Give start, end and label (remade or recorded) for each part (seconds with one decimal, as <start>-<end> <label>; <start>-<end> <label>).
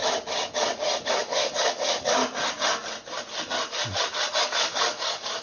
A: 0.0-1.0 recorded; 1.0-2.2 remade; 2.2-4.4 recorded; 4.4-5.4 remade